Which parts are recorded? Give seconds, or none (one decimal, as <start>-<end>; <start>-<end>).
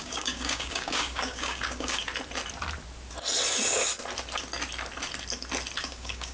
2.0-5.8